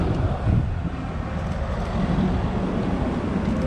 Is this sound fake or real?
real